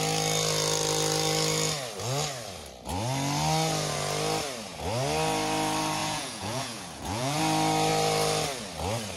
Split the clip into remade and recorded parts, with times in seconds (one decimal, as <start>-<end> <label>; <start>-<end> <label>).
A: 0.0-6.0 recorded; 6.0-7.4 remade; 7.4-9.2 recorded